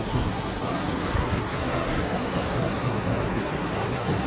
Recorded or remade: remade